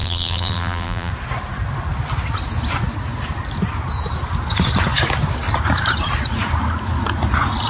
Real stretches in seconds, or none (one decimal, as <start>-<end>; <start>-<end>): 1.1-7.7